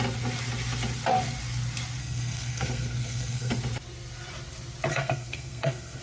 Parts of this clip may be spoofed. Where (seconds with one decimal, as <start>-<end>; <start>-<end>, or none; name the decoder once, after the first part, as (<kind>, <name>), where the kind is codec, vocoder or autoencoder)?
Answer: 2.0-3.6 (codec, SNAC); 4.9-6.0